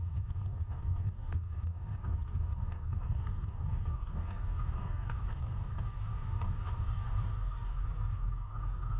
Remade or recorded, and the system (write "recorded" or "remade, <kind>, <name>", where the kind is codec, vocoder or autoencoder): remade, codec, DAC